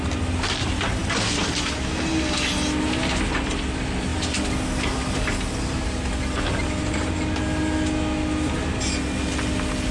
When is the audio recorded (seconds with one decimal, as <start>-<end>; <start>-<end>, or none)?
0.0-9.9